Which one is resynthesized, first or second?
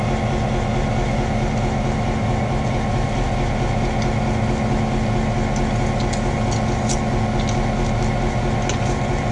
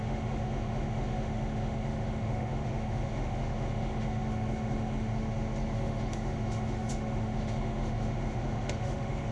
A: second